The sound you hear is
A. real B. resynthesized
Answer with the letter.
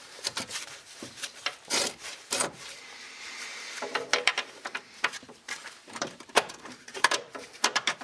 B